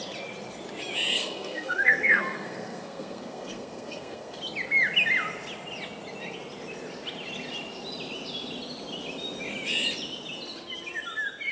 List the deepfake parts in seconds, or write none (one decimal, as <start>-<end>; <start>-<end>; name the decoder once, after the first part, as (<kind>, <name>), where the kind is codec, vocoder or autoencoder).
1.1-4.4 (codec, SNAC)